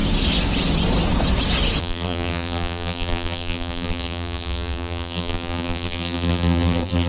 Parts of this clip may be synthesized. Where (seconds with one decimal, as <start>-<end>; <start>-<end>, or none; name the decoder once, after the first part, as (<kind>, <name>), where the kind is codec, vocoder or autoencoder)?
1.8-7.1 (vocoder, BigVGAN v2)